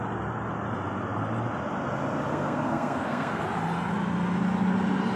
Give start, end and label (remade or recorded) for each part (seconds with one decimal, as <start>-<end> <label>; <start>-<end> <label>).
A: 0.0-2.3 recorded; 2.3-3.4 remade; 3.4-5.2 recorded